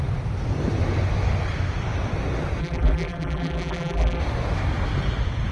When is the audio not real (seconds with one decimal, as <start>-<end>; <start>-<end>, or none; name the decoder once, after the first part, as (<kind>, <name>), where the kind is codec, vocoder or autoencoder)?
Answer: 2.6-4.2 (vocoder, BigVGAN v2)